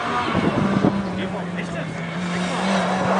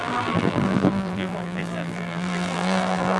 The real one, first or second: first